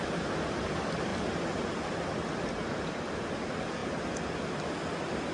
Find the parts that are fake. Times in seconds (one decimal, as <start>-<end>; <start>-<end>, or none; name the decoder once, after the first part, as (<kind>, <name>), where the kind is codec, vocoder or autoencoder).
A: 0.0-1.1 (vocoder, BigVGAN v2); 2.9-3.8; 4.4-5.3